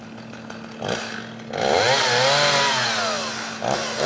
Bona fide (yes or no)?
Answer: yes